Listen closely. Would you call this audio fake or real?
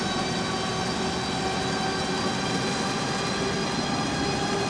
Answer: real